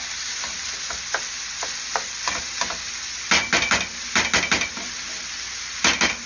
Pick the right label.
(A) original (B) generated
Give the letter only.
A